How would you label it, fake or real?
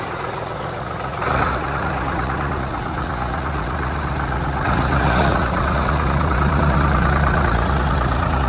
fake